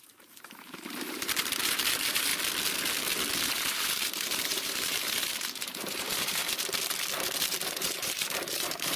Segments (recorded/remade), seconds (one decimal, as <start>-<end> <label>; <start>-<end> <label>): 0.0-2.3 remade; 2.3-3.4 recorded; 3.4-6.4 remade; 6.4-7.5 recorded; 7.5-9.0 remade